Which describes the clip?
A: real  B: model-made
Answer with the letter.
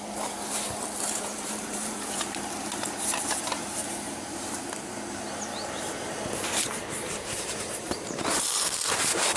B